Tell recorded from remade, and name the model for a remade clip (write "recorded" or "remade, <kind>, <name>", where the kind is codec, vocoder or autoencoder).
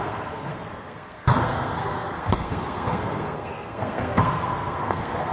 remade, codec, SNAC